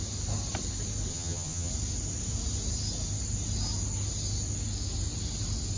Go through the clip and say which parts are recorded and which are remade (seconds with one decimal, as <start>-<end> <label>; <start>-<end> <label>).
0.0-1.1 recorded; 1.1-1.7 remade; 1.7-5.8 recorded